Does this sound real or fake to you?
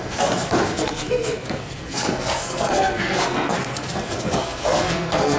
fake